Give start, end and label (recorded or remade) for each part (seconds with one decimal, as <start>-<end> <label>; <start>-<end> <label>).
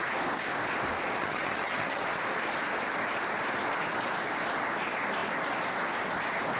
0.0-1.2 recorded; 1.2-2.0 remade; 2.0-6.6 recorded